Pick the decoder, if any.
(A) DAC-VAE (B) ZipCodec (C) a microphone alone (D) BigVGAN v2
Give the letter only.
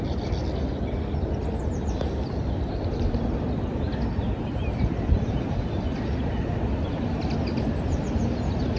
C